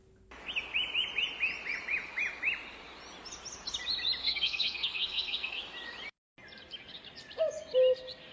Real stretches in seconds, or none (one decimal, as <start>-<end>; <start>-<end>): 0.0-4.2; 5.6-8.3